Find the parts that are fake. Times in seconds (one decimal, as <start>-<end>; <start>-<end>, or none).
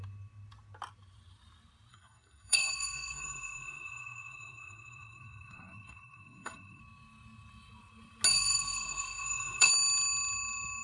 1.9-6.8; 8.3-9.7